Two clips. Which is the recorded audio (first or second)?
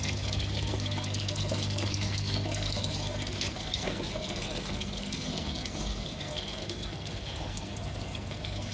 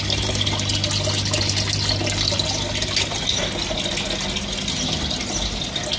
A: second